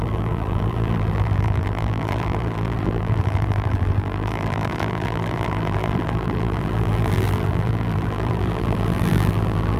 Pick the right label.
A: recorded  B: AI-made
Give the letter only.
B